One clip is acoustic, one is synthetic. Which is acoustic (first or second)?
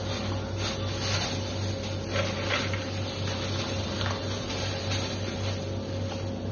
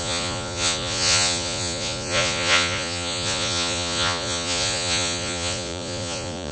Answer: first